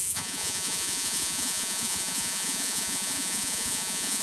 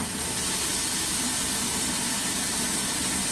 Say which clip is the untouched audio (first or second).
second